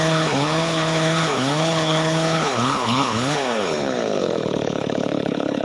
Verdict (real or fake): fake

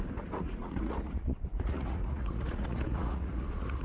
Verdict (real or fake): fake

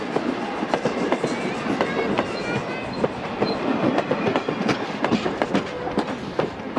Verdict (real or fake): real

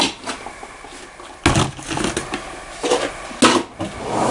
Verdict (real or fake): real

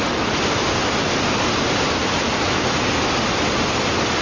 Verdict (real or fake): real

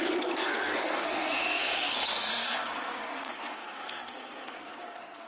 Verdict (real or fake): fake